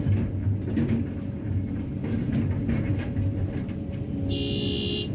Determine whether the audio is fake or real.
real